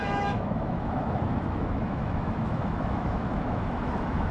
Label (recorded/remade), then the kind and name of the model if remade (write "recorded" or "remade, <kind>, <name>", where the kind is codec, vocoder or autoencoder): remade, autoencoder, DAC-VAE